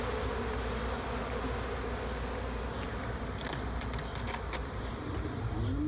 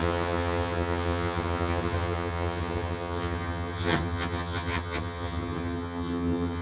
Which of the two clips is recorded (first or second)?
first